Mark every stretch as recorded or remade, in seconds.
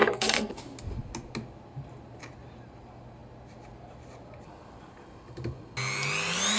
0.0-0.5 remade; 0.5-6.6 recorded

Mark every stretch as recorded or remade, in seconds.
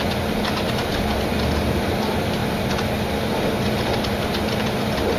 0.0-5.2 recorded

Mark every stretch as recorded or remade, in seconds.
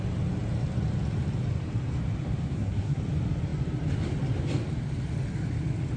0.0-2.5 recorded; 2.5-3.0 remade; 3.0-6.0 recorded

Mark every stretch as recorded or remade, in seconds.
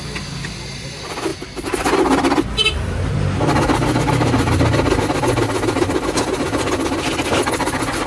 0.0-8.1 recorded